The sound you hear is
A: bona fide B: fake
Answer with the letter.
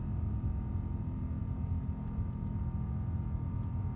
A